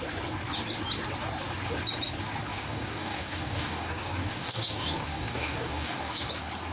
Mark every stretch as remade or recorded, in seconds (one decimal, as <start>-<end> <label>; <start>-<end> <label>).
0.0-2.5 recorded; 2.5-6.3 remade; 6.3-6.7 recorded